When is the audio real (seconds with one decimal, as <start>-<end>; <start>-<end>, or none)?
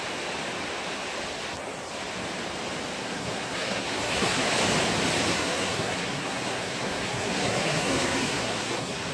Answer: 0.0-3.0; 4.5-5.3